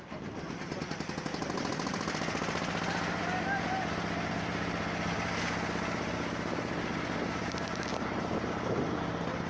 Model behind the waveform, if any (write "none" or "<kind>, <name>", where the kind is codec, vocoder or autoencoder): none